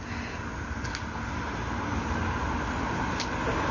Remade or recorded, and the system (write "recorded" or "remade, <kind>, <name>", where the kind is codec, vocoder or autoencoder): recorded